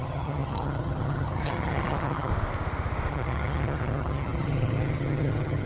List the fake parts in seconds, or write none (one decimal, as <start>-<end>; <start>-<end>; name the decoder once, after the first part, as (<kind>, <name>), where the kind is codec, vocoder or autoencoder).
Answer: 0.0-2.3 (vocoder, HiFi-GAN); 3.1-5.7